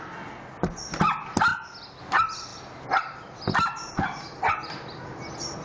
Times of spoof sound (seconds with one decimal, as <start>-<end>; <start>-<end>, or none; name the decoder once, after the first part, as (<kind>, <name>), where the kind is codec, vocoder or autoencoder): none